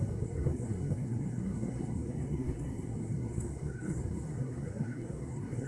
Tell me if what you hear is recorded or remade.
remade